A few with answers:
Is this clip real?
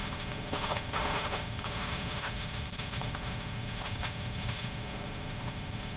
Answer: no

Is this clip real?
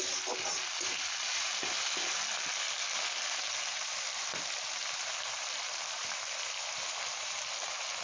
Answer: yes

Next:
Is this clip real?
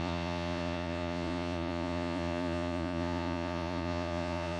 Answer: no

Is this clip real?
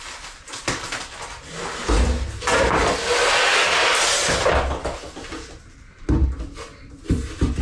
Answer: yes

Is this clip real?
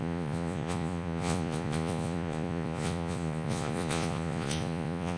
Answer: no